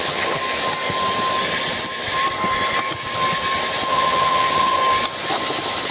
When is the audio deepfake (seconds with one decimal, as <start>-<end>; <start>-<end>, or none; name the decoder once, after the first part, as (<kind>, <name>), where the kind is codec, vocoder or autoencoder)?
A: 0.0-0.4 (vocoder, HiFi-GAN); 3.9-4.8